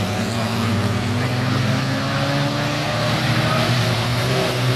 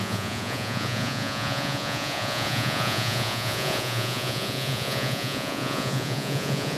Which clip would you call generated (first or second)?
second